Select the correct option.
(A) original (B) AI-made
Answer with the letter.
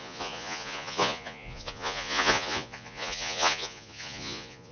B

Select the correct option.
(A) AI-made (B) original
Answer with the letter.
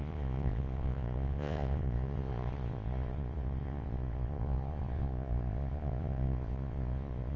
A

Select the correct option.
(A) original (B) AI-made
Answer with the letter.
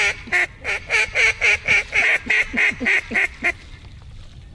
A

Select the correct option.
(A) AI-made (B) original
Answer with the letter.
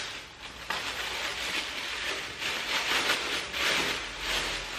B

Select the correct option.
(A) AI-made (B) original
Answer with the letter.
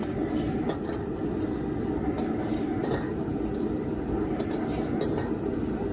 B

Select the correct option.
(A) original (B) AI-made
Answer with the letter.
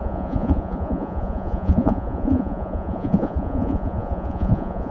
B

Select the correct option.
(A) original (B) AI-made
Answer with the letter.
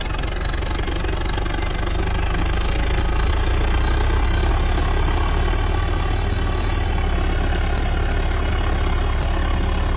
A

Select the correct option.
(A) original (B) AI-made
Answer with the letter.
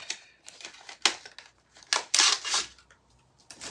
A